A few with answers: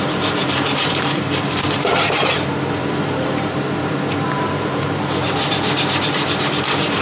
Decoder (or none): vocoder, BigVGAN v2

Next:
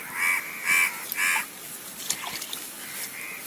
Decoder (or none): none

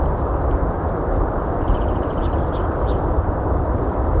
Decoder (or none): vocoder, BigVGAN v2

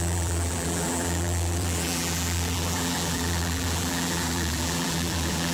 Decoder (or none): vocoder, BigVGAN v2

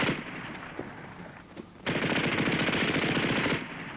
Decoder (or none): vocoder, BigVGAN v2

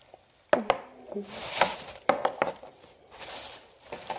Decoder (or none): none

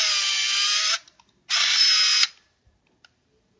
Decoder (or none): none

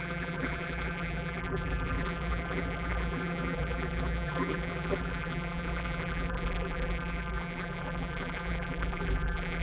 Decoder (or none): vocoder, BigVGAN v2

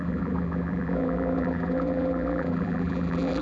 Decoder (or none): vocoder, BigVGAN v2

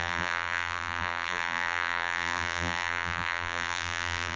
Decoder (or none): vocoder, BigVGAN v2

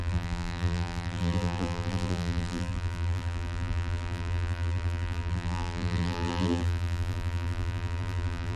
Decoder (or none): vocoder, BigVGAN v2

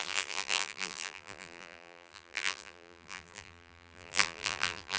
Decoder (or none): vocoder, BigVGAN v2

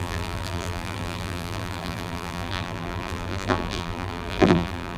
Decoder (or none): vocoder, BigVGAN v2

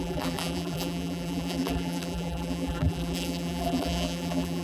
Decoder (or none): vocoder, BigVGAN v2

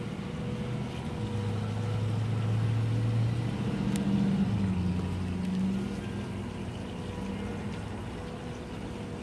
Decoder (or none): none